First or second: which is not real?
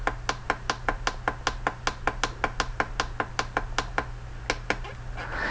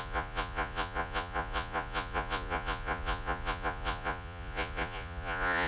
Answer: second